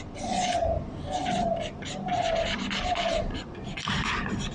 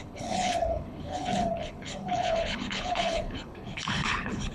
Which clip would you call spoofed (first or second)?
second